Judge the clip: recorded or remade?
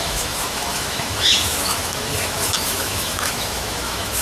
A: remade